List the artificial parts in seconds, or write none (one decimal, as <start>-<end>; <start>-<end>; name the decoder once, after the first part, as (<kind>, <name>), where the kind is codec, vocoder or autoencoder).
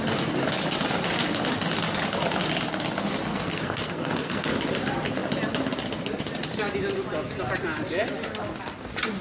3.3-4.5 (codec, SNAC)